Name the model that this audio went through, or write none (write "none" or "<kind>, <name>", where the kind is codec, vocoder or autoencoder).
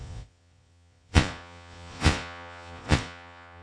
vocoder, Vocos